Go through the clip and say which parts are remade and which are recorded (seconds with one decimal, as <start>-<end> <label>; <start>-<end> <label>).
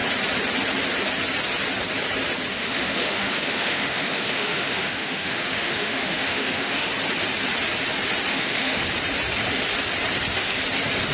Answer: 0.0-2.5 recorded; 2.5-6.9 remade; 6.9-8.3 recorded; 8.3-8.8 remade; 8.8-11.1 recorded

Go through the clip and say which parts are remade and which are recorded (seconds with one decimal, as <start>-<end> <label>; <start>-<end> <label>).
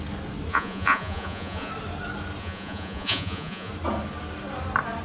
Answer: 0.0-0.5 recorded; 0.5-1.7 remade; 1.7-2.4 recorded; 2.4-3.7 remade; 3.7-5.0 recorded